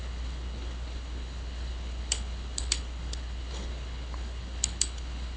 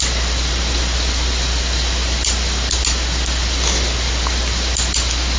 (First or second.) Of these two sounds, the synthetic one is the first